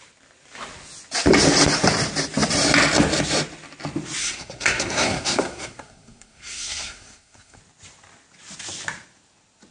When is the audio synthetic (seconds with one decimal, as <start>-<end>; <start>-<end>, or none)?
4.2-7.6